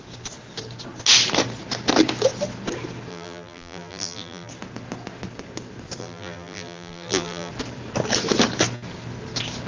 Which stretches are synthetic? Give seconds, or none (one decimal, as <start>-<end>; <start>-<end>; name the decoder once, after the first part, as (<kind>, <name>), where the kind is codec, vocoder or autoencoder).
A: 3.1-4.5 (vocoder, BigVGAN v2); 6.0-7.5